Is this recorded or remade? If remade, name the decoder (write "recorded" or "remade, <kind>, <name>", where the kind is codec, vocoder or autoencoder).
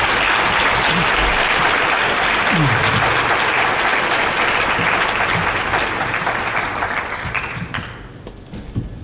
recorded